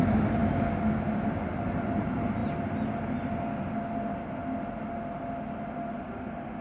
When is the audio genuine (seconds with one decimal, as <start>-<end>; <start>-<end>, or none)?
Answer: 0.0-6.6